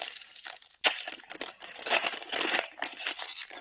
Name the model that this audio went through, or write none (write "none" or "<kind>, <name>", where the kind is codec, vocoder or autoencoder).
vocoder, BigVGAN v2